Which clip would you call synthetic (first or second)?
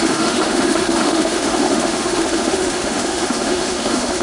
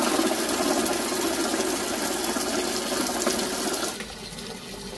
first